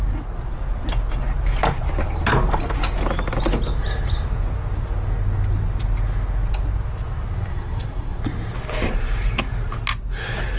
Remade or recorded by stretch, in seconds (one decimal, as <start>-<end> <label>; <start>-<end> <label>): 0.0-7.5 recorded; 7.5-8.2 remade; 8.2-10.6 recorded